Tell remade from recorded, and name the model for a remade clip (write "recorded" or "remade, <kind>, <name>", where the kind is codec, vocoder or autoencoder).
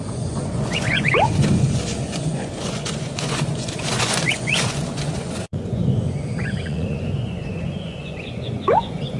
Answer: remade, vocoder, Vocos